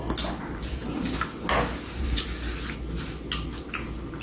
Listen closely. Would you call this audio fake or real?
real